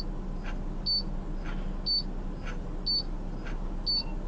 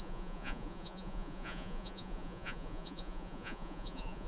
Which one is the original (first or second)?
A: first